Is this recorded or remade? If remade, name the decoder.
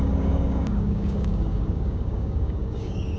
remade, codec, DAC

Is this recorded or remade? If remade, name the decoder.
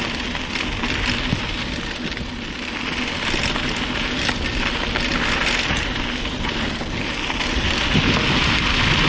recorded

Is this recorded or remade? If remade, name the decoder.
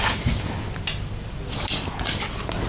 recorded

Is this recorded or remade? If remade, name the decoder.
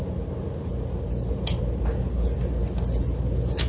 recorded